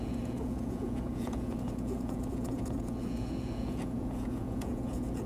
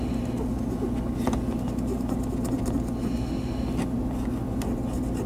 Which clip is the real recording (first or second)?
second